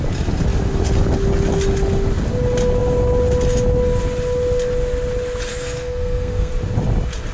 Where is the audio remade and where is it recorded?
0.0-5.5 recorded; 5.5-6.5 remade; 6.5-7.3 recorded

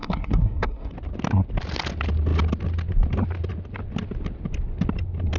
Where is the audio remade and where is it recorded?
0.0-0.9 remade; 0.9-5.4 recorded